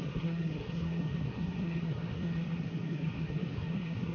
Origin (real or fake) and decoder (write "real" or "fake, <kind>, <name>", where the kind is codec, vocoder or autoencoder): fake, codec, SNAC